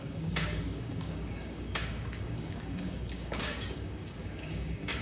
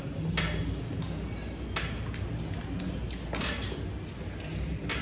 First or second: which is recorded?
second